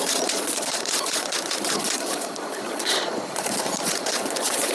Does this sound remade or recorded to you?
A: remade